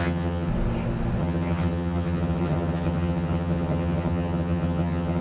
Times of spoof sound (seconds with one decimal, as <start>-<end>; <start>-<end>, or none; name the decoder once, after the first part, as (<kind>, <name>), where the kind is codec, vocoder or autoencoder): 0.0-0.5 (vocoder, HiFi-GAN); 1.2-5.2

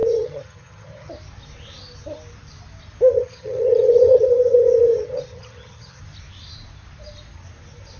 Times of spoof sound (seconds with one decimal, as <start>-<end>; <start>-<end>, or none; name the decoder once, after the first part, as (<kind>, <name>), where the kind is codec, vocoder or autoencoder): 0.0-1.1 (vocoder, HiFi-GAN); 3.1-6.0